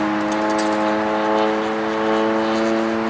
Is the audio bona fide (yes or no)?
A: yes